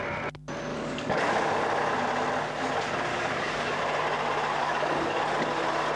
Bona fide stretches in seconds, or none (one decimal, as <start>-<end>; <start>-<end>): 0.0-0.7; 1.6-3.1; 3.8-4.6; 5.2-6.0